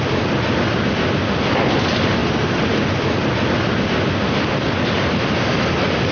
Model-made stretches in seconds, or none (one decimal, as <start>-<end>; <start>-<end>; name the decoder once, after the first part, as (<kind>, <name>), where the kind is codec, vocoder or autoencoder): none

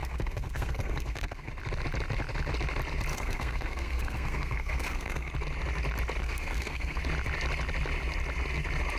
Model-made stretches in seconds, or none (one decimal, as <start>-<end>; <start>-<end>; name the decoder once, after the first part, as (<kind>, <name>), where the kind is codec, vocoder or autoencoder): 0.0-1.5 (codec, SNAC); 3.1-5.3; 6.2-7.0

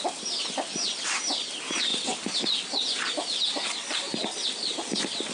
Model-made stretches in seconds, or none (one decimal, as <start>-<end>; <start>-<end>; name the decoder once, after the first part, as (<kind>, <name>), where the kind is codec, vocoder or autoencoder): none

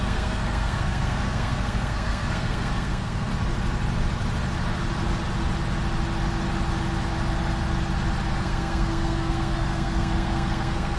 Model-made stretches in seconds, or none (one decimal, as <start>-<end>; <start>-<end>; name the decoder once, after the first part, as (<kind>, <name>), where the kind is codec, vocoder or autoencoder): 0.0-3.3 (codec, SNAC); 8.3-11.0

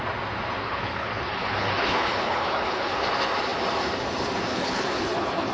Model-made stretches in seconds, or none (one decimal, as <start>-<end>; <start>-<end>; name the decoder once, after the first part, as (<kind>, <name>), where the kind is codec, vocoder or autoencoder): 0.6-3.0 (codec, HILCodec); 4.5-5.5

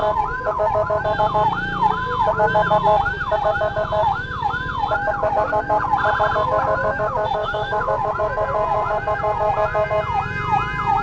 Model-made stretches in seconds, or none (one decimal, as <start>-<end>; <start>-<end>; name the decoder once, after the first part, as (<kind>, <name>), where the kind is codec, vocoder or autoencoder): 4.0-4.5 (autoencoder, DAC-VAE); 7.4-8.1

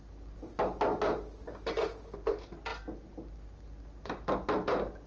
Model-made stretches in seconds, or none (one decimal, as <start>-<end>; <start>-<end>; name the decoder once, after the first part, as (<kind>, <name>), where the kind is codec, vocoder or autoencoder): none

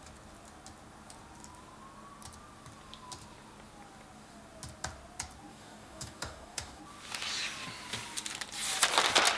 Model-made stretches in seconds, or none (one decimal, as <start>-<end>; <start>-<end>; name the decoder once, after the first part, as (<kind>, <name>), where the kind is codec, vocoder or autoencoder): 5.5-6.8 (codec, DAC)